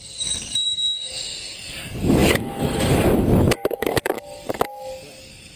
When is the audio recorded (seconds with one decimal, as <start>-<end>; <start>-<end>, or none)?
none